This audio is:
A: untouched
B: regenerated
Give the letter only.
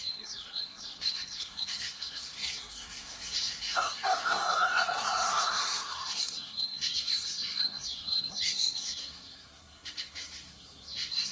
B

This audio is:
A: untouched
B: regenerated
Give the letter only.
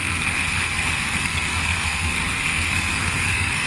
B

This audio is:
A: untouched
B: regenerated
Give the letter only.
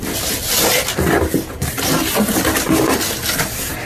A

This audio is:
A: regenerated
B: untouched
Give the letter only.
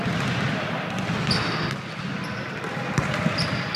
B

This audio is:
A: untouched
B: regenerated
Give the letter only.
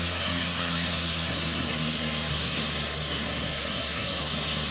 B